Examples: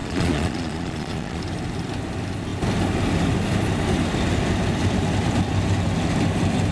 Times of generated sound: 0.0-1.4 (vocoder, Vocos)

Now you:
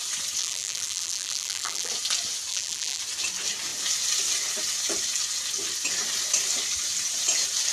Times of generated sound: 0.4-1.9 (vocoder, BigVGAN v2); 2.5-3.0